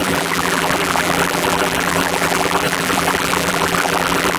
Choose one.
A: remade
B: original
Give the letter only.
A